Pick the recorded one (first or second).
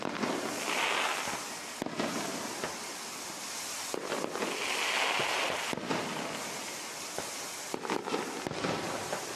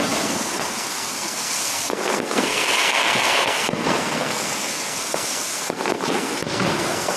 first